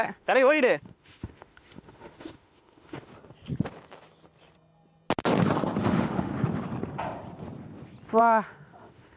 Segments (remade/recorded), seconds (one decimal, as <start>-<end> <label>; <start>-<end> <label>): 0.0-3.1 remade; 3.1-5.8 recorded; 5.8-6.3 remade; 6.3-8.2 recorded; 8.2-9.2 remade

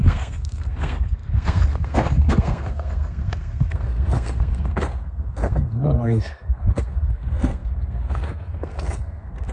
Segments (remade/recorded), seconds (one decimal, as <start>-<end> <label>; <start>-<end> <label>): 0.0-9.5 remade